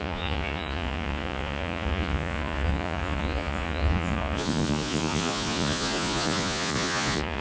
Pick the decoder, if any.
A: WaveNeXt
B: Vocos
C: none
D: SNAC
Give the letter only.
B